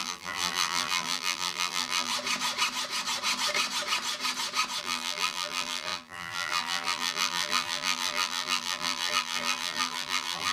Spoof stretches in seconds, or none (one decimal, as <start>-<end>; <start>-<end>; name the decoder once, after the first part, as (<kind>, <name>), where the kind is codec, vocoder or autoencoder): 0.0-2.1 (vocoder, BigVGAN v2); 4.8-10.5